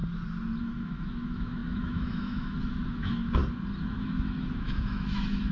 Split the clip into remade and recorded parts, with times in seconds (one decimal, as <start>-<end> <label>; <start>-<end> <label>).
0.0-0.6 recorded; 0.6-3.4 remade; 3.4-3.9 recorded; 3.9-5.5 remade